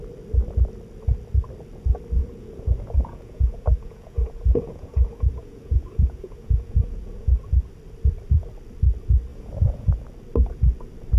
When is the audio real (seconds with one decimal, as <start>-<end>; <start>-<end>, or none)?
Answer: 0.0-2.2; 7.4-9.3; 9.9-11.2